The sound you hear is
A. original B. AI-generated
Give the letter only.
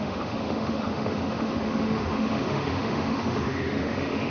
B